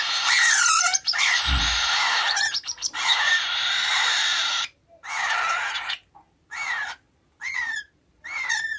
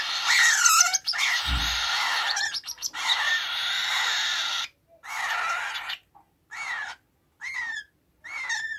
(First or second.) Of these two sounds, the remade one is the first